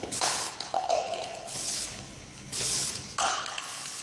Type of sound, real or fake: fake